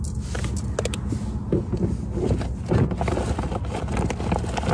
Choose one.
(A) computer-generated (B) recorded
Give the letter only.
B